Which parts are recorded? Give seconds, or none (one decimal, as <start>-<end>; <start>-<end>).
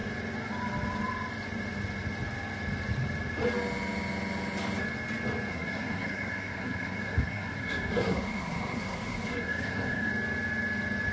0.0-5.5; 10.1-11.1